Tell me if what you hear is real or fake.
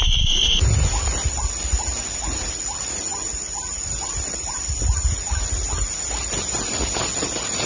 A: real